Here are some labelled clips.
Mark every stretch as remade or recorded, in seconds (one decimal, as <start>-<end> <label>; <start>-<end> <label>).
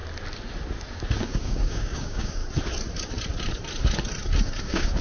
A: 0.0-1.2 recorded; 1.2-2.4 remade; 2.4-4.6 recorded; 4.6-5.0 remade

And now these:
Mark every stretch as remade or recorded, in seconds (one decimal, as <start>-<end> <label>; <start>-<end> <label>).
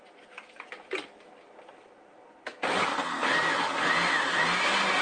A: 0.0-5.0 recorded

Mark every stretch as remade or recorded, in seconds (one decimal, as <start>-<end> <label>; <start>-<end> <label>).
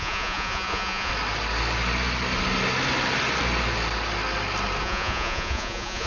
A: 0.0-1.1 remade; 1.1-4.8 recorded; 4.8-6.1 remade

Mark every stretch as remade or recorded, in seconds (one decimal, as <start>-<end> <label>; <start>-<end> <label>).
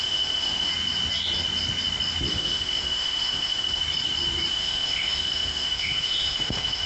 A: 0.0-0.7 remade; 0.7-2.3 recorded; 2.3-3.8 remade; 3.8-4.5 recorded; 4.5-6.9 remade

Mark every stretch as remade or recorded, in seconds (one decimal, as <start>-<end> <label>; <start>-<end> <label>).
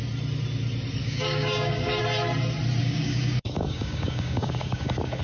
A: 0.0-1.0 recorded; 1.0-2.0 remade; 2.0-2.8 recorded; 2.8-5.2 remade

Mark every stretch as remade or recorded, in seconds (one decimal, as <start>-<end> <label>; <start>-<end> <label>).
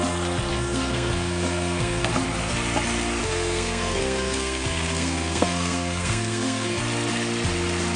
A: 0.0-0.5 recorded; 0.5-2.1 remade; 2.1-3.2 recorded; 3.2-6.8 remade; 6.8-8.0 recorded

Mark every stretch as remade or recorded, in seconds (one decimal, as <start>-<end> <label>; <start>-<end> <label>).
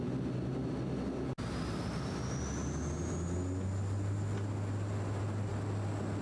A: 0.0-6.2 recorded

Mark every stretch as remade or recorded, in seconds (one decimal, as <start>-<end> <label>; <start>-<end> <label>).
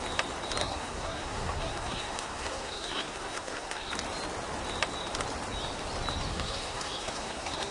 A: 0.0-0.6 recorded; 0.6-3.9 remade; 3.9-6.3 recorded; 6.3-7.7 remade